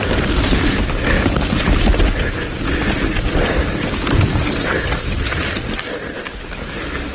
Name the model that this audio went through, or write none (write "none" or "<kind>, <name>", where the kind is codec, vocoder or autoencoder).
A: none